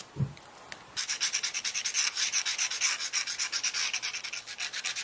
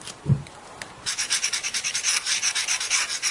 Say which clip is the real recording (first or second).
first